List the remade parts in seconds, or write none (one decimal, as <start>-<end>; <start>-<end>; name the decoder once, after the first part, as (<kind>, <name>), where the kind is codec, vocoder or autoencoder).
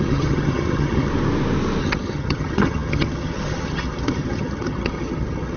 0.0-1.1 (vocoder, HiFi-GAN); 1.8-5.6